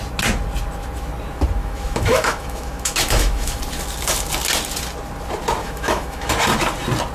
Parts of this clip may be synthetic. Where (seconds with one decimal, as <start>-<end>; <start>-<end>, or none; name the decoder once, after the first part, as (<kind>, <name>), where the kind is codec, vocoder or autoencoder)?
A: 1.6-3.6 (autoencoder, DAC-VAE); 5.6-6.3